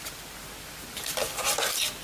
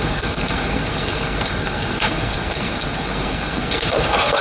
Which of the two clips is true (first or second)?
first